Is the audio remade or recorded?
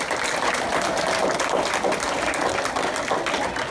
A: recorded